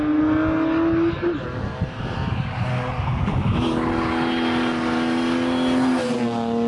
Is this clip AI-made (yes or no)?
no